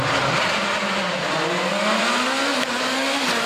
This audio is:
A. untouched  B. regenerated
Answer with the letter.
A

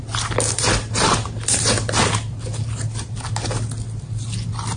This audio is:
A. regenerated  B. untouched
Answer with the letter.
B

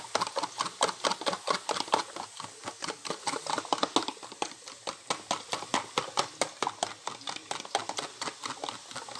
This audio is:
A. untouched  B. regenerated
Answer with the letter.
A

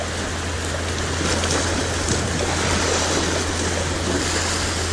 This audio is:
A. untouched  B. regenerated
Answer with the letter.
A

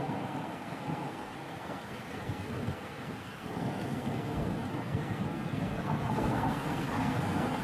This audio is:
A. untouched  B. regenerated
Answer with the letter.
B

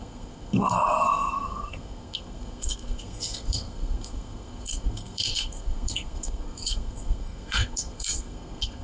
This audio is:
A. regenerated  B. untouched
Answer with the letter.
A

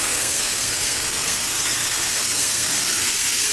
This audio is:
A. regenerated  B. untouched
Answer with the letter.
A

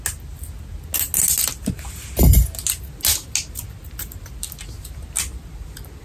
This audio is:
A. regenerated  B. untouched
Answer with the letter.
B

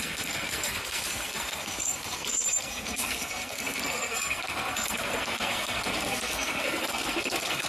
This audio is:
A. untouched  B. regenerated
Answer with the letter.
B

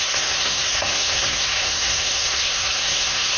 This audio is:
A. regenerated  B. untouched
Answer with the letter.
A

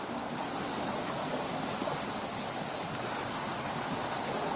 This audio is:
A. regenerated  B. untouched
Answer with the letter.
B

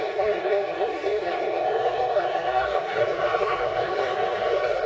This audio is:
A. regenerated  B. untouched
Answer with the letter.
A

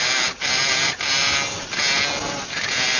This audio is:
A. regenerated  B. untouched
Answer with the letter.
B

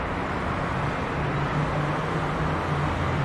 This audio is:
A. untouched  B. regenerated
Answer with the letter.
A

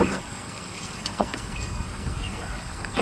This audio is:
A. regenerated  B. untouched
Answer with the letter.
A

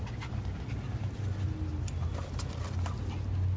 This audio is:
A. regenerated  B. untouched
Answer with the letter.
B